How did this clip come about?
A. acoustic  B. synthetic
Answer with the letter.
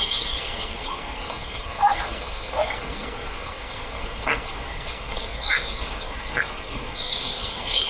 B